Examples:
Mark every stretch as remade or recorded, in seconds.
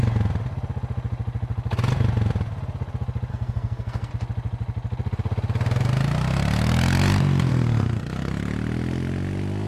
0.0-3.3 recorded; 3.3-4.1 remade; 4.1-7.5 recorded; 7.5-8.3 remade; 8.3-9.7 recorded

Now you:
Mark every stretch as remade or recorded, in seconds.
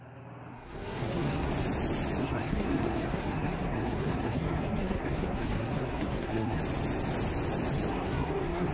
0.0-0.5 recorded; 0.5-1.5 remade; 1.5-2.2 recorded; 2.2-6.6 remade; 6.6-7.9 recorded; 7.9-8.7 remade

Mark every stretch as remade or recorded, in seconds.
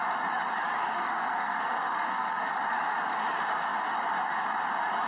0.0-0.8 recorded; 0.8-2.5 remade; 2.5-5.1 recorded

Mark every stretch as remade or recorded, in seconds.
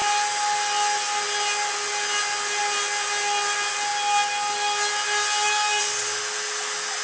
0.0-7.0 recorded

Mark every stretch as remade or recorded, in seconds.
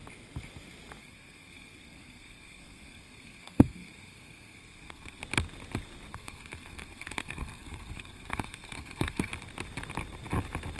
0.0-1.0 recorded; 1.0-5.2 remade; 5.2-6.1 recorded; 6.1-9.3 remade; 9.3-10.8 recorded